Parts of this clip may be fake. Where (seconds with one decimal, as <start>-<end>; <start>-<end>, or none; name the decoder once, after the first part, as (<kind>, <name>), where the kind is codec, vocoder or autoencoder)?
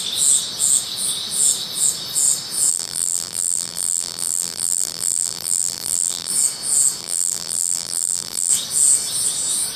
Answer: 2.7-6.3 (vocoder, BigVGAN v2); 7.0-8.5